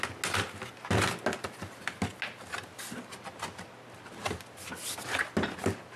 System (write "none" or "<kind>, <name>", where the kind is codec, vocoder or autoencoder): none